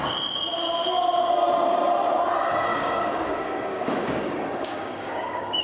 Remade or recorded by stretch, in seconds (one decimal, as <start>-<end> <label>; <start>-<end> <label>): 0.0-2.7 recorded; 2.7-5.6 remade